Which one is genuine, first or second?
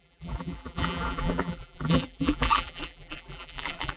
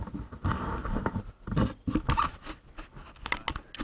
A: second